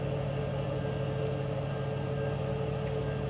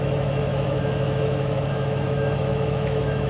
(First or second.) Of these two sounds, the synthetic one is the second